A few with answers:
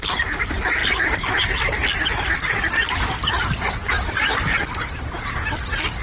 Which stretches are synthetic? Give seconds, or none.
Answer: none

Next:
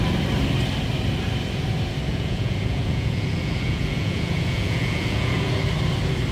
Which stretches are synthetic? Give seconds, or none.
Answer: 2.1-5.5 (vocoder, Vocos)

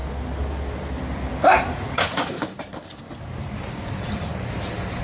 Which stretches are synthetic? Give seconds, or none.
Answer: 1.6-2.5 (vocoder, Vocos); 3.7-4.3

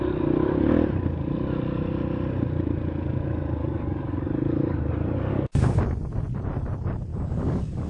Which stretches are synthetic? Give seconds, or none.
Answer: 3.6-5.8 (codec, DAC); 7.1-7.9

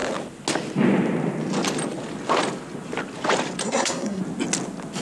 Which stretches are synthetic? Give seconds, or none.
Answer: 3.6-4.2 (codec, SNAC)

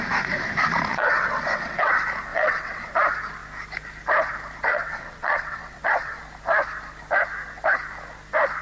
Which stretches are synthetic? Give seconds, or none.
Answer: 0.9-1.9 (vocoder, WaveNeXt); 2.3-2.9; 4.7-6.2

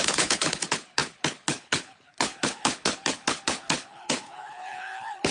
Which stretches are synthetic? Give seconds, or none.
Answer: 0.0-5.3 (codec, HILCodec)